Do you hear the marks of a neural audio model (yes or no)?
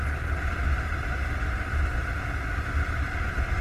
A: no